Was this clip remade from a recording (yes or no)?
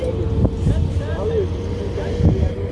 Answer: no